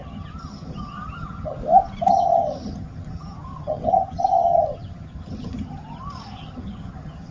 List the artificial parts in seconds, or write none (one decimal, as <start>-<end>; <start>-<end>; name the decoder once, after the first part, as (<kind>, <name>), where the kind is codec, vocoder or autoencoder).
0.0-1.6 (vocoder, HiFi-GAN); 2.1-7.3

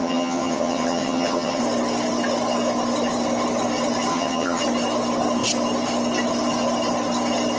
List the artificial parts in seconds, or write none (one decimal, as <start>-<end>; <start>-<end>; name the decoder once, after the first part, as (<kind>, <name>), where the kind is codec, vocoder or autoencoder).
0.0-1.6 (vocoder, HiFi-GAN); 4.1-4.6

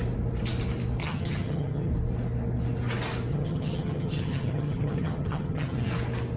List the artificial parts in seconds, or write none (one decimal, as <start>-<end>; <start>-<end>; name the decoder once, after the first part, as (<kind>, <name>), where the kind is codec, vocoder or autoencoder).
1.0-1.9 (vocoder, HiFi-GAN); 3.3-5.9

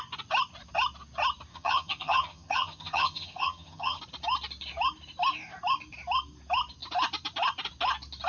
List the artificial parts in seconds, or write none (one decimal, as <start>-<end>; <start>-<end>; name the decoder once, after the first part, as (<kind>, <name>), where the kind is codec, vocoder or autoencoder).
1.5-4.0 (vocoder, HiFi-GAN)

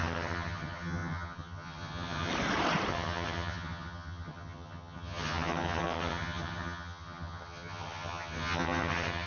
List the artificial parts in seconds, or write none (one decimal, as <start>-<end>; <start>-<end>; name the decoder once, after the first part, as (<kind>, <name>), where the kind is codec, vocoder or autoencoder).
0.0-2.3 (vocoder, HiFi-GAN); 2.9-9.3

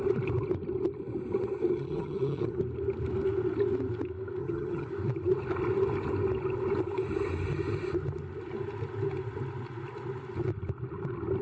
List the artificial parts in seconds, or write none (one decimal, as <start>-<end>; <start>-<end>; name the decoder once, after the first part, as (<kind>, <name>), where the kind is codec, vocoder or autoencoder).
1.7-2.6 (vocoder, HiFi-GAN); 4.4-4.9

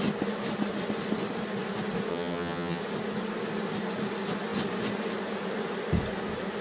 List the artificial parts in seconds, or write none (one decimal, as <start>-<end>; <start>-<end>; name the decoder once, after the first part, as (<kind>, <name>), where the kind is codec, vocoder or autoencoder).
2.1-2.8 (vocoder, HiFi-GAN)

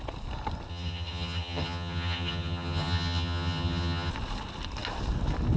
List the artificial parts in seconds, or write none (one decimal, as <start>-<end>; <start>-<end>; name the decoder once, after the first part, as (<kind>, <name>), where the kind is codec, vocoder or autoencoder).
0.7-4.1 (vocoder, HiFi-GAN)